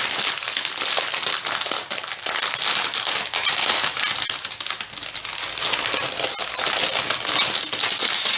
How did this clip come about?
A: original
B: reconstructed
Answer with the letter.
A